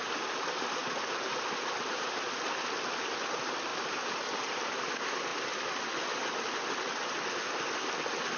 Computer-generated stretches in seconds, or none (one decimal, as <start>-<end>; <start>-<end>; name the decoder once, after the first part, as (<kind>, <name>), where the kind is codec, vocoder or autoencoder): 0.8-2.2 (vocoder, BigVGAN v2); 3.7-4.8